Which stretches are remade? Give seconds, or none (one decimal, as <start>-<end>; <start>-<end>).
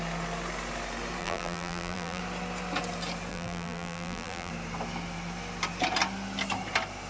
1.2-2.2; 3.3-4.5